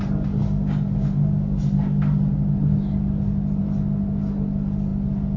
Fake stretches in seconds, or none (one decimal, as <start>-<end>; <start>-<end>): none